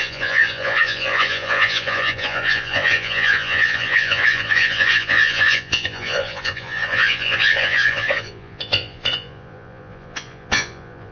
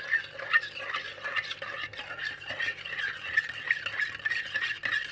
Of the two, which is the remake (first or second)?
first